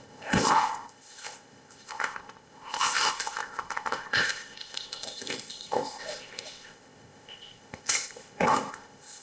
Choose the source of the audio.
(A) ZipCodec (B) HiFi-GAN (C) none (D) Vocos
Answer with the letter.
A